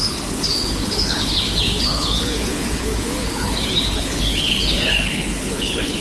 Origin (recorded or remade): remade